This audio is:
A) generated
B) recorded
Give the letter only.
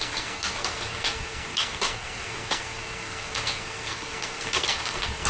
A